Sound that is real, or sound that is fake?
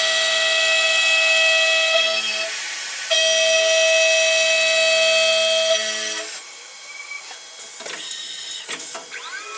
real